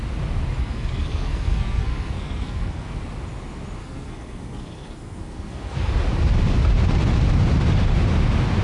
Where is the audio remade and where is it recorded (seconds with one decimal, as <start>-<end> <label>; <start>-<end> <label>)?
0.0-0.6 recorded; 0.6-2.9 remade; 2.9-3.8 recorded; 3.8-5.9 remade; 5.9-8.6 recorded